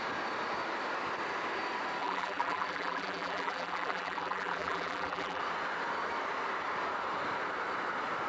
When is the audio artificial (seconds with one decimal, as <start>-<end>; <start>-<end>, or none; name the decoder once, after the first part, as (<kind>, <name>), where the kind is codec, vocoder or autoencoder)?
2.0-5.4 (vocoder, BigVGAN v2)